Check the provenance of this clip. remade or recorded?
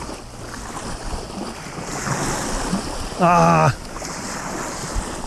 recorded